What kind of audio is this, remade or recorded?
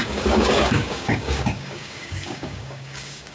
remade